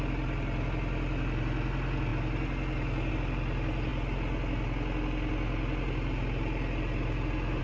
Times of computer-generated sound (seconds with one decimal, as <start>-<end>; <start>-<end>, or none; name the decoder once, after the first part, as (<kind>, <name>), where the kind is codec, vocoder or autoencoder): none